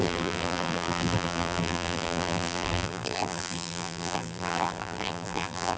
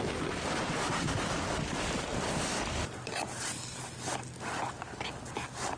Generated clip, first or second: first